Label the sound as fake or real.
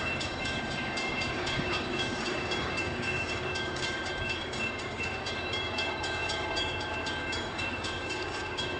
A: fake